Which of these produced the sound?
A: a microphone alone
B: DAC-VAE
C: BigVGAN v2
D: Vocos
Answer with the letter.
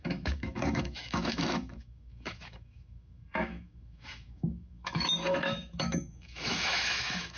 B